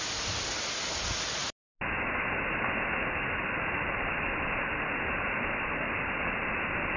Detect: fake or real real